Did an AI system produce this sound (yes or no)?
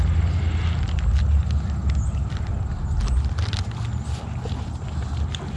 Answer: no